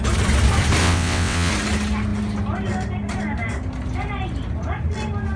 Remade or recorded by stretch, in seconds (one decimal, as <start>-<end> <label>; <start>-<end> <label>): 0.0-0.8 recorded; 0.8-1.5 remade; 1.5-5.4 recorded